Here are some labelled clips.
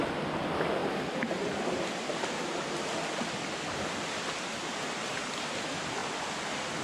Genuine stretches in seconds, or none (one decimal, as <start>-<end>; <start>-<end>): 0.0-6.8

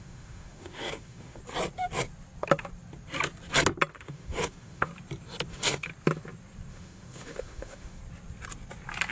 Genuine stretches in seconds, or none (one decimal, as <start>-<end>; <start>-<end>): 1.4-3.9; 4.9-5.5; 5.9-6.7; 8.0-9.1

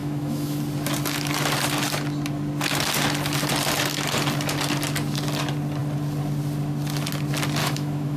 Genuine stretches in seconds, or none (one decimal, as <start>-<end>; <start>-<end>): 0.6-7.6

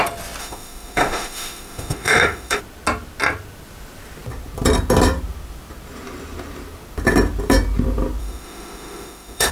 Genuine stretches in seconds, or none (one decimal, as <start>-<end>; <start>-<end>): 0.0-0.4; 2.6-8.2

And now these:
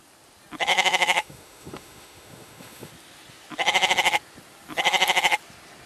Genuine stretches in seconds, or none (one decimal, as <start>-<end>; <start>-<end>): 0.0-0.7; 2.9-5.9

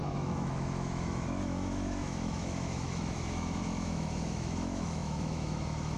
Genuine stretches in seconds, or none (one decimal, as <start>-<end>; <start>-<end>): none